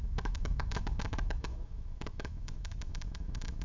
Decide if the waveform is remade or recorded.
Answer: remade